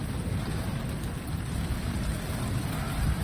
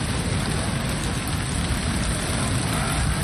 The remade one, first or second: first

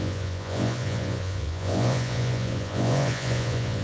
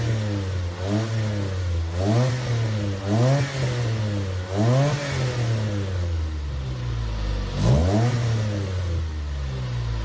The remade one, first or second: first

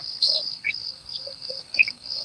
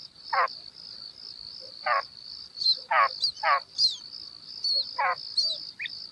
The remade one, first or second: first